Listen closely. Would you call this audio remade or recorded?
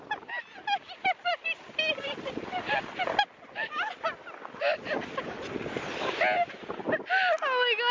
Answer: recorded